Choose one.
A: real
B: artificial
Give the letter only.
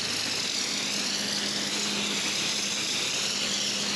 A